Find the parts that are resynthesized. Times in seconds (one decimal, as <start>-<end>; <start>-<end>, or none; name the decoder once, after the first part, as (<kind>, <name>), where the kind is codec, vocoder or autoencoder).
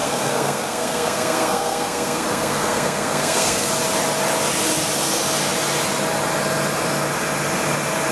0.0-3.7 (codec, SNAC)